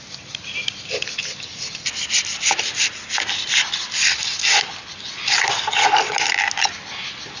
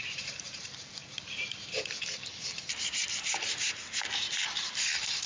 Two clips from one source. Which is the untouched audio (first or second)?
first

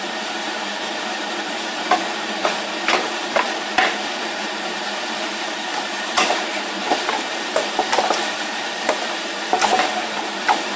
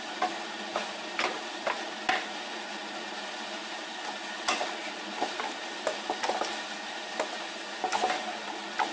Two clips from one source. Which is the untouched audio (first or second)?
second